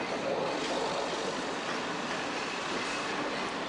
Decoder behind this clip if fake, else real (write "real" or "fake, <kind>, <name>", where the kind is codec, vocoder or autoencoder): real